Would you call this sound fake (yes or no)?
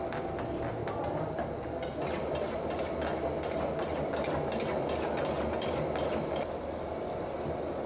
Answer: no